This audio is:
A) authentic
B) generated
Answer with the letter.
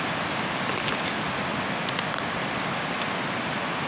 A